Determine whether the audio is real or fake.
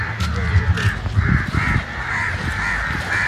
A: real